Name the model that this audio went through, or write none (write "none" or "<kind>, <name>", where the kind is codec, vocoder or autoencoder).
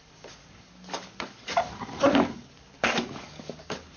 codec, DAC